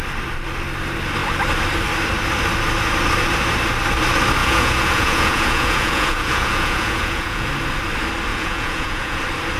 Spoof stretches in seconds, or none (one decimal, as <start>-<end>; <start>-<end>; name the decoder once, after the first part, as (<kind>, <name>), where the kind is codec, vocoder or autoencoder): 4.4-7.5 (vocoder, Vocos); 8.3-9.2